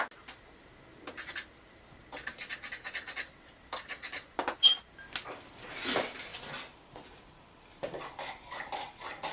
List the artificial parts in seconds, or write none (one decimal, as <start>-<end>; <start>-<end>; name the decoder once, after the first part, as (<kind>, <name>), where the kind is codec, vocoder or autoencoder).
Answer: none